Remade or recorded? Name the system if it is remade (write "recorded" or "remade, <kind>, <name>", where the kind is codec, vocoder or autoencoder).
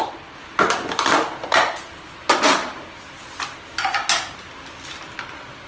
recorded